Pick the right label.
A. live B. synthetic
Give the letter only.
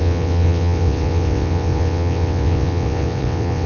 B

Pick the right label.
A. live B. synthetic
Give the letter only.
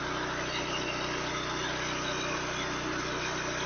A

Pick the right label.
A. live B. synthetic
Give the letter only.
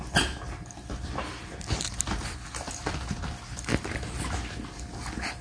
A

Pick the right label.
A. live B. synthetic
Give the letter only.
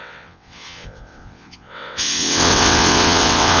B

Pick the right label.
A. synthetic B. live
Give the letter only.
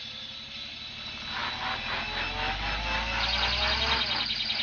B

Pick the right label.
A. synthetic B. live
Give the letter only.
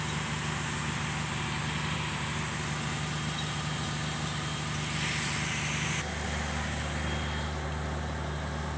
B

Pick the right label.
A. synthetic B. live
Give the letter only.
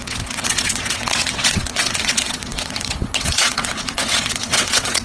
A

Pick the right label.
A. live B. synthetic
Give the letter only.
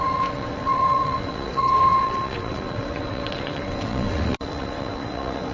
B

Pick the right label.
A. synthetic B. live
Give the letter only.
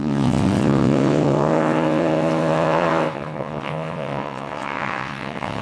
A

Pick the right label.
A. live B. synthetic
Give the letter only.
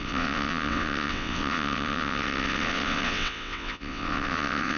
B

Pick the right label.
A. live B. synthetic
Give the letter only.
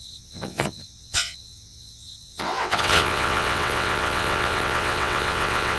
B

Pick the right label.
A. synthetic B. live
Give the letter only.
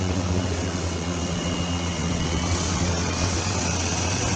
A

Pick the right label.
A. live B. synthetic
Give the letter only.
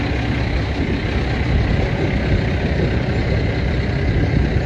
A